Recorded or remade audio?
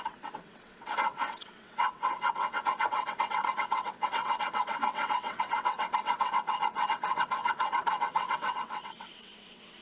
remade